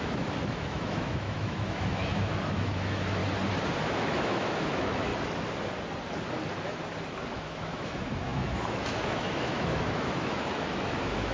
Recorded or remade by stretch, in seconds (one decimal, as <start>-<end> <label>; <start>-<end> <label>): 0.0-3.2 remade; 3.2-3.8 recorded; 3.8-5.1 remade; 5.1-7.3 recorded; 7.3-11.3 remade